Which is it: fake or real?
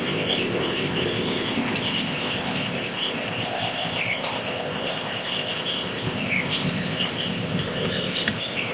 fake